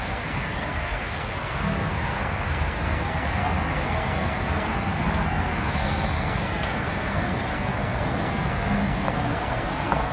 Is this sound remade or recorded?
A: remade